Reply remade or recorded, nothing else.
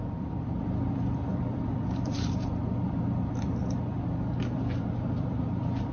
remade